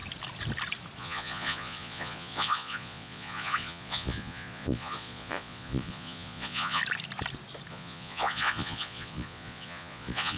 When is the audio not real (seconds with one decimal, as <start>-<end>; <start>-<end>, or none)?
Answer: 1.0-6.8; 7.7-10.4